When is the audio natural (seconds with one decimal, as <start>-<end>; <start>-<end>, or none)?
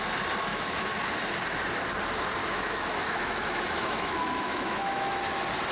0.0-0.5; 1.0-2.4; 5.2-5.7